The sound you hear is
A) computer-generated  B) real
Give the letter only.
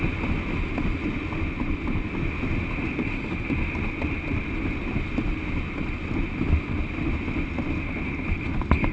B